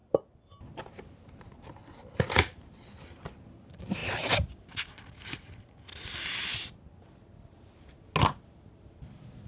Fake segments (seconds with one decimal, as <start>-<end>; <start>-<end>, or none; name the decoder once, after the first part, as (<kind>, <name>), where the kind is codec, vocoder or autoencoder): 0.0-0.9 (vocoder, BigVGAN v2)